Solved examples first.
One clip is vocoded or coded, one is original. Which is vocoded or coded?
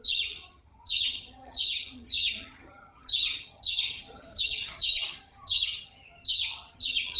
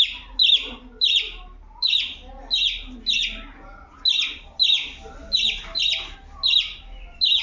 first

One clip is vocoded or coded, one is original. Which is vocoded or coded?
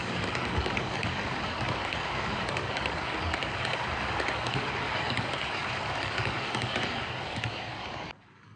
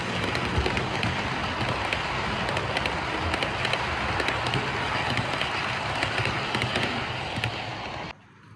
first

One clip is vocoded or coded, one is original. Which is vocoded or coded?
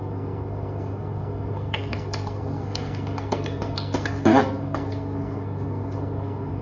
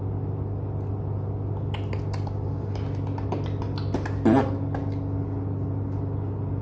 first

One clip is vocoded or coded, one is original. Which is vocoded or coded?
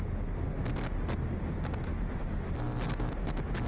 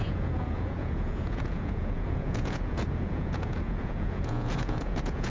second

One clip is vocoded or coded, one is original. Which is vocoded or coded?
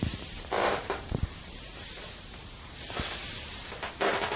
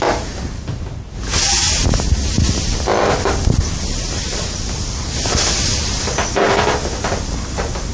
first